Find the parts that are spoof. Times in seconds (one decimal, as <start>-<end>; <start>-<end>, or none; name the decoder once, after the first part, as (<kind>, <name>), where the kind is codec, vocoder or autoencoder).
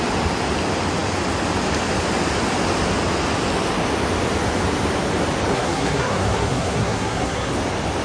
5.5-7.5 (codec, SNAC)